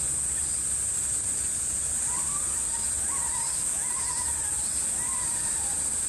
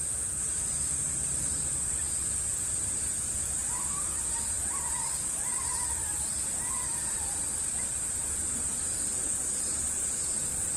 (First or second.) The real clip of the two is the first